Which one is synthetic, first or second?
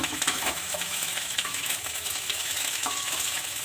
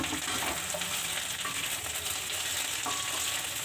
first